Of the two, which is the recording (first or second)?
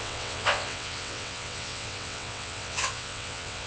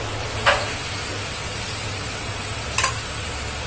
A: second